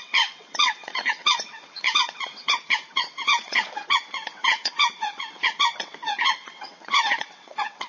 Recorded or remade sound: remade